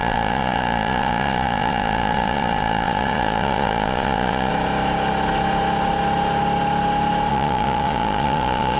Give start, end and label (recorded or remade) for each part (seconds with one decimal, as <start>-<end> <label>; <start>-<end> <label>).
0.0-4.5 remade; 4.5-7.3 recorded; 7.3-8.8 remade